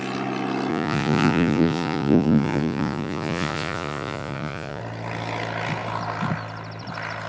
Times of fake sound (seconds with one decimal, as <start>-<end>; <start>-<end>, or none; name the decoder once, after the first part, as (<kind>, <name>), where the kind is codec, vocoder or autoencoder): 0.7-4.8 (vocoder, Vocos)